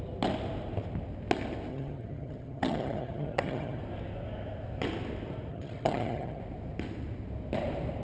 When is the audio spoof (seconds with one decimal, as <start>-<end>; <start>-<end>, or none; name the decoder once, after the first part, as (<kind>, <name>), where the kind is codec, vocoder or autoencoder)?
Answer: 1.7-3.8 (vocoder, HiFi-GAN); 5.5-6.4